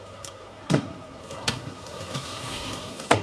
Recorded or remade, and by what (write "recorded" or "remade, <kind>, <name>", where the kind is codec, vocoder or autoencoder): remade, codec, SNAC